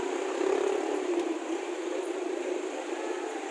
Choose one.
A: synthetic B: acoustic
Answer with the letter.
A